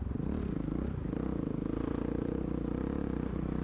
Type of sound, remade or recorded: remade